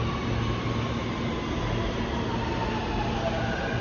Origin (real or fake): real